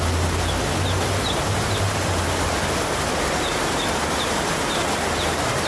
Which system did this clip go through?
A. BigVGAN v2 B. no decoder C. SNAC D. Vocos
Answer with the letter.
B